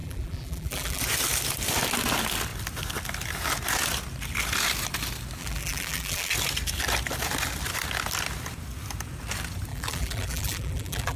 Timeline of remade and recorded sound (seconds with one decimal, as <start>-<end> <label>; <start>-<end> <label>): 0.0-1.0 remade; 1.0-5.4 recorded; 5.4-6.3 remade; 6.3-9.7 recorded; 9.7-11.2 remade